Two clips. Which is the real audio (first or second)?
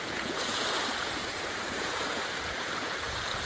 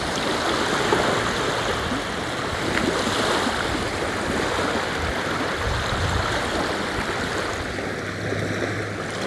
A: second